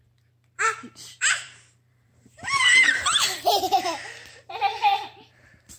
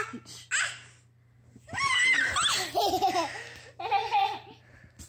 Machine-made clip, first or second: first